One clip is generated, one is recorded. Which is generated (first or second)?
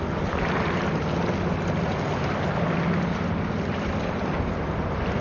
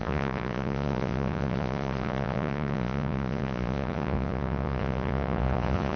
second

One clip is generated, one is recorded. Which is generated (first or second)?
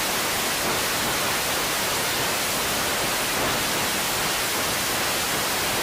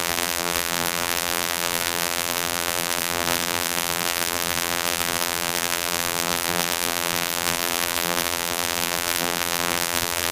second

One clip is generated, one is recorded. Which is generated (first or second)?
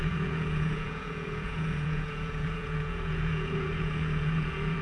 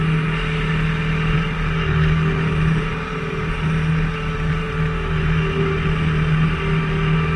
first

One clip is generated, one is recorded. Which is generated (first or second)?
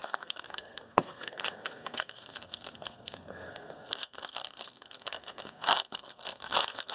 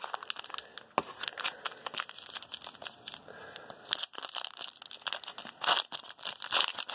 first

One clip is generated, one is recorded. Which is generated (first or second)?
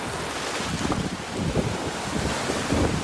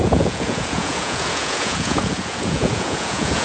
second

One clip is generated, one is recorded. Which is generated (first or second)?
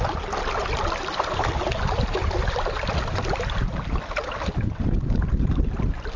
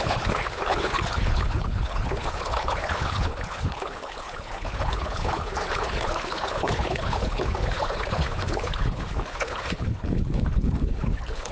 second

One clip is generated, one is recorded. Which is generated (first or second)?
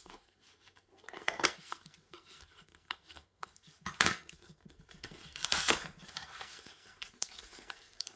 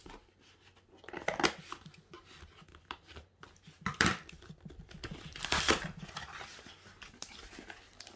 first